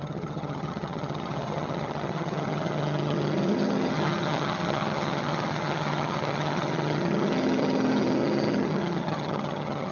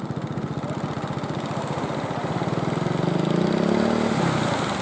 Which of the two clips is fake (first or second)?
first